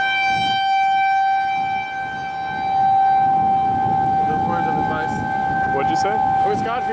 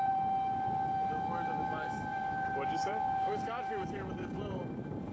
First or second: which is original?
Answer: first